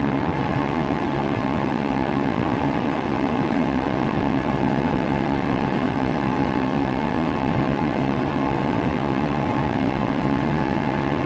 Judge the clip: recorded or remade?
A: remade